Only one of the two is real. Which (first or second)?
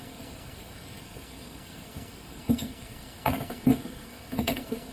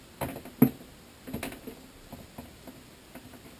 second